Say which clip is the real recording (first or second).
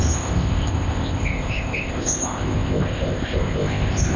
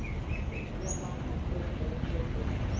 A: second